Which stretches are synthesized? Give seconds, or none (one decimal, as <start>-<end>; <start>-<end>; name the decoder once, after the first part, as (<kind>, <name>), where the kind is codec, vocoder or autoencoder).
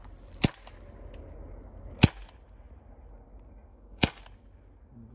3.7-4.2 (codec, DAC)